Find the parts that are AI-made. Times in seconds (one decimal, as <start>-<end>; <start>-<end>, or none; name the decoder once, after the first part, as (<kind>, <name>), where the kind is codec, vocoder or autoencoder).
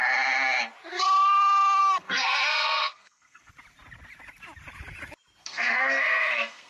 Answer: 1.8-3.5 (codec, SNAC); 5.4-6.7